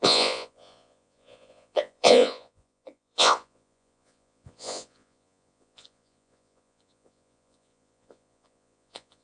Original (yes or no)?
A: no